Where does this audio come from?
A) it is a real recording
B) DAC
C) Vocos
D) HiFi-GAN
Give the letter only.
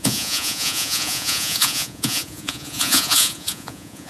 C